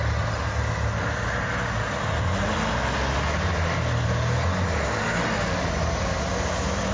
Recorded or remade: recorded